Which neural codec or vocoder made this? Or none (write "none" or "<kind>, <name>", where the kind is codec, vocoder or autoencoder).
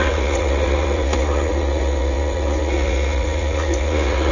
vocoder, Vocos